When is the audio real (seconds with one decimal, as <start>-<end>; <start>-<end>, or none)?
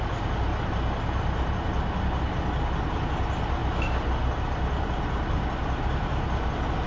0.5-2.8; 3.6-4.7